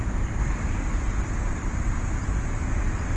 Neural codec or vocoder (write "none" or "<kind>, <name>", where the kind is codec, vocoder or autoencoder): none